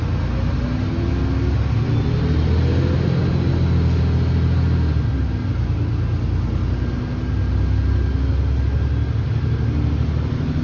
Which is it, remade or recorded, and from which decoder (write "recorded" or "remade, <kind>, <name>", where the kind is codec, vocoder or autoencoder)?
recorded